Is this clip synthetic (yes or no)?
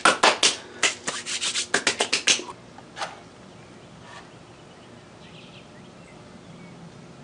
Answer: no